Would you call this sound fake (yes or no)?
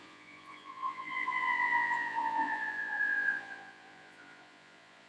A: yes